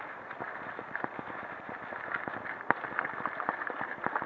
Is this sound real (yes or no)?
yes